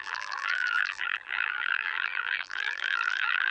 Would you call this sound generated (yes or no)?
yes